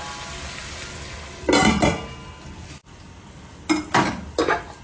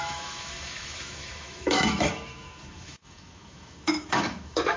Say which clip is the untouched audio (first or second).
first